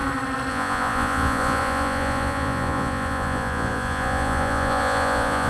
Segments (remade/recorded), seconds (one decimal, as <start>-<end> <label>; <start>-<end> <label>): 0.0-0.5 recorded; 0.5-5.5 remade

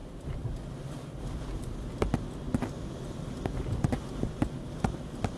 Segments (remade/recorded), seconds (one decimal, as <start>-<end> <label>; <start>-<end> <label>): 0.0-5.4 recorded

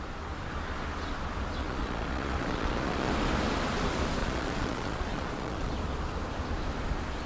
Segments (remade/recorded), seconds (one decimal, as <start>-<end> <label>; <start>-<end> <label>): 0.0-1.6 recorded; 1.6-3.1 remade; 3.1-4.2 recorded; 4.2-5.7 remade; 5.7-7.3 recorded